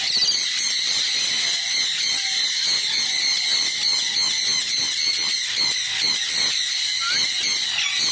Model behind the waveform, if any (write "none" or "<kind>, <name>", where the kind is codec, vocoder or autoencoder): none